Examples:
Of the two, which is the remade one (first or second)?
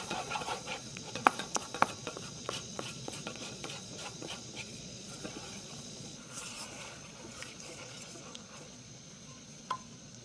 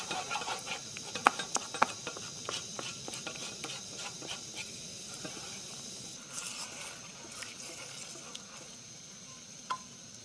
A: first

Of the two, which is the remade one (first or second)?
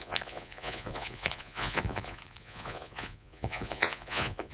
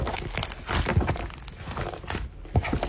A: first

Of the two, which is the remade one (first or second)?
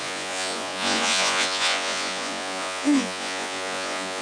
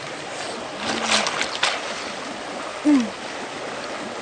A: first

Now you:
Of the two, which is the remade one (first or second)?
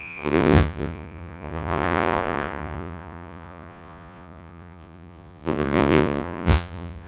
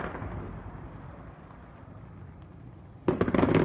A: first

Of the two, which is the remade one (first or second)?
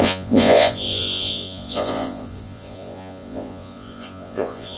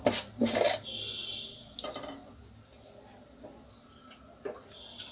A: first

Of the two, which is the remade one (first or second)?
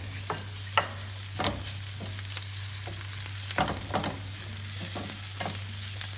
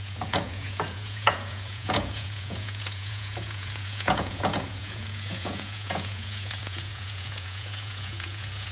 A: second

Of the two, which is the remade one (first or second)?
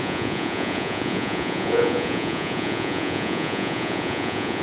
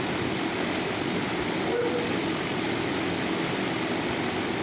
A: first